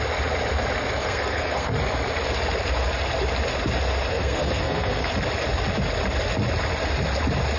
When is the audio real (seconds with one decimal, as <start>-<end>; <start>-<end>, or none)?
0.0-1.0; 1.7-4.1; 5.1-7.6